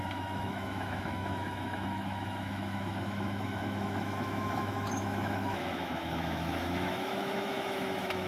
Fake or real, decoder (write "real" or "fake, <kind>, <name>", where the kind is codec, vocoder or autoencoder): fake, autoencoder, DAC-VAE